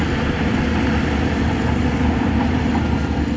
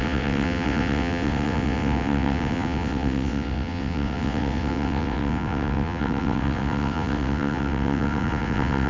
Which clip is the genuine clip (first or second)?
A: first